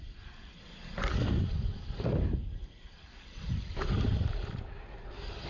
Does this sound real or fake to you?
fake